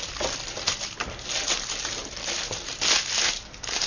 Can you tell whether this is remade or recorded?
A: recorded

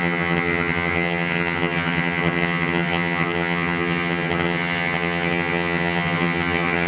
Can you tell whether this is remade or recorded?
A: remade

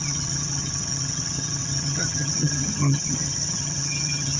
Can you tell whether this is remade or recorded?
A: remade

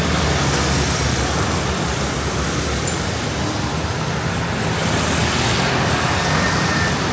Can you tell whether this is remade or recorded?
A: recorded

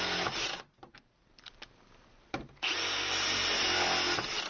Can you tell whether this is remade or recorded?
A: recorded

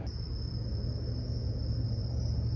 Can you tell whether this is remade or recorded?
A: recorded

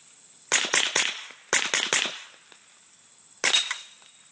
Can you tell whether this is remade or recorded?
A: recorded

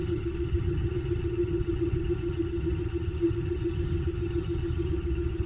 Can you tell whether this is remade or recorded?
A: remade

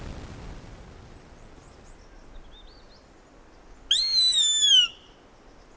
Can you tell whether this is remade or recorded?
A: recorded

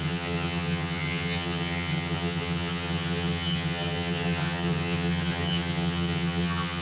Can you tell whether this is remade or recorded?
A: remade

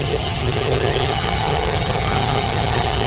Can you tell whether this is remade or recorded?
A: remade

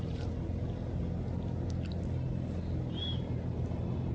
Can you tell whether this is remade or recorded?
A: recorded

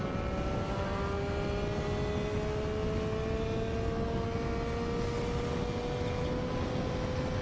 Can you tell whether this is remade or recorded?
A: recorded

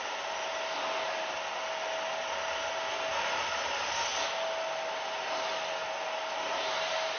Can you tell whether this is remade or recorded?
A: recorded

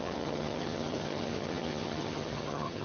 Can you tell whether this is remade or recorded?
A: remade